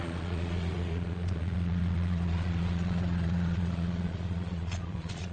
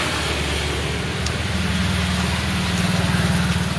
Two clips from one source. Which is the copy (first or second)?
first